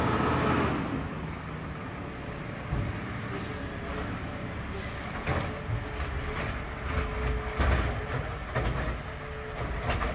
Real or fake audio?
real